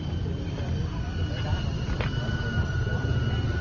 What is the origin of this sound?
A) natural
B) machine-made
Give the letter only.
A